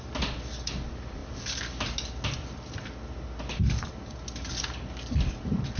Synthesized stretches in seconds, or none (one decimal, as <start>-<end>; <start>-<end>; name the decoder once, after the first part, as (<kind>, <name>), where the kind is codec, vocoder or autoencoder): none